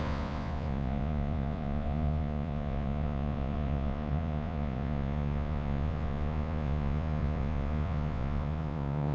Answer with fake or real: fake